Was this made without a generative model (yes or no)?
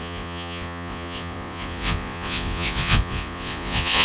no